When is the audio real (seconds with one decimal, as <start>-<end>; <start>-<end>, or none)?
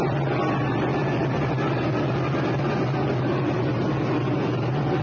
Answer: 0.0-5.0